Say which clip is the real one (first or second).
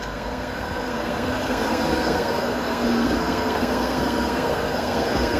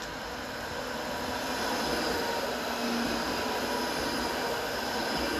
second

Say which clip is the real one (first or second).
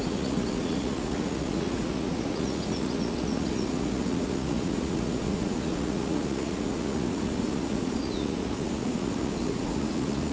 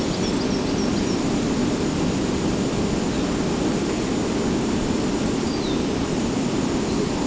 second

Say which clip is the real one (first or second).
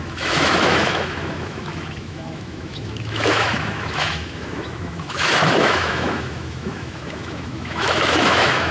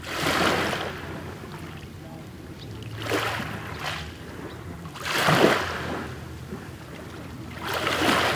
second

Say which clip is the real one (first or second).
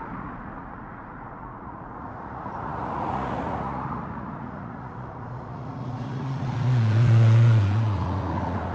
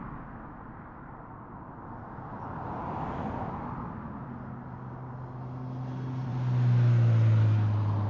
second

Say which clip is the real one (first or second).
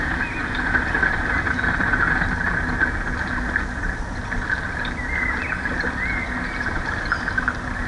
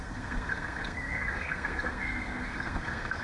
first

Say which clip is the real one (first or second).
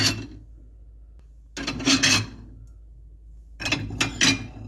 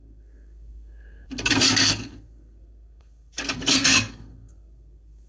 first